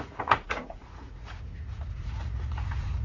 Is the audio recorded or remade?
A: remade